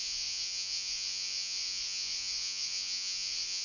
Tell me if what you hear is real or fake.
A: fake